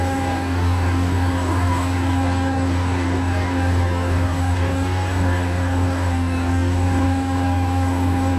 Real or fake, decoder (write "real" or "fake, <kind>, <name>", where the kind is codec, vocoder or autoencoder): fake, codec, DAC